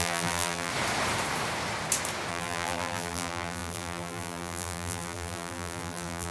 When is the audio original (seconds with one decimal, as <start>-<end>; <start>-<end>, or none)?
0.7-2.3